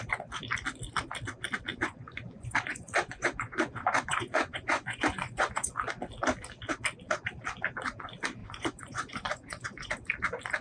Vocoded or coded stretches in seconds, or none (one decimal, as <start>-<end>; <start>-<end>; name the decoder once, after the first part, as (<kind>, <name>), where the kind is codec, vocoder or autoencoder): 1.7-5.7 (vocoder, Vocos); 8.4-9.9